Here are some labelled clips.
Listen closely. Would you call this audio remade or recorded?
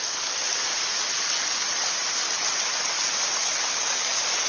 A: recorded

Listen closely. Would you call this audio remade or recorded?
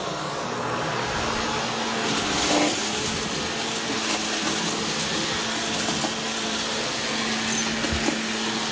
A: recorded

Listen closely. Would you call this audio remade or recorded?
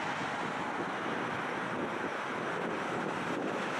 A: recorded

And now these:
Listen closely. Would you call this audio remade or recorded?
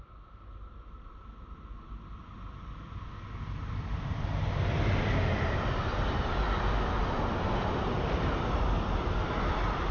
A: recorded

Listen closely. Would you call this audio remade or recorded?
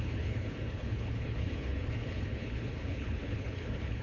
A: remade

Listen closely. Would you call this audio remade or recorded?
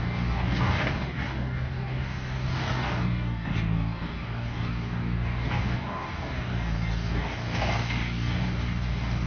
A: remade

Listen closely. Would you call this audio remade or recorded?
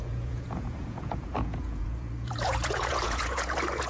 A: remade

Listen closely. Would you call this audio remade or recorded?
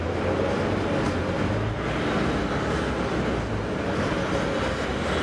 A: recorded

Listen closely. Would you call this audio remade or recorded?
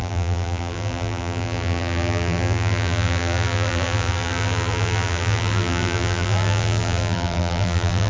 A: remade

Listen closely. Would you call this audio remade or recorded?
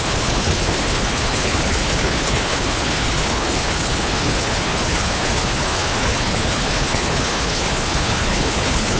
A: remade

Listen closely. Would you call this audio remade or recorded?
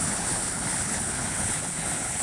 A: remade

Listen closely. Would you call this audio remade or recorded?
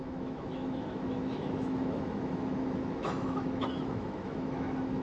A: remade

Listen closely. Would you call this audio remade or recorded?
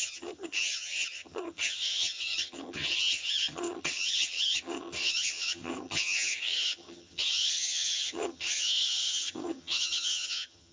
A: remade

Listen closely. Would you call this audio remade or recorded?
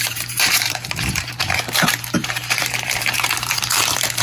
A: remade